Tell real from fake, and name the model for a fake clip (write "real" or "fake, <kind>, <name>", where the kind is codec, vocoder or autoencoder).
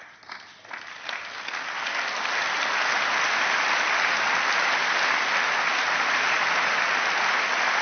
real